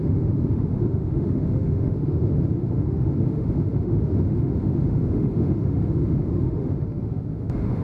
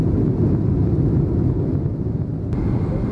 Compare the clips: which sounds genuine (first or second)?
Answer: second